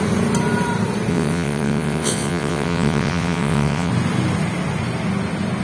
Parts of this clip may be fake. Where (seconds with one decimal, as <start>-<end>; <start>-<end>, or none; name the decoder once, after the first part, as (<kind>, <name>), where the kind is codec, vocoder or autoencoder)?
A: 1.1-3.9 (vocoder, WaveNeXt)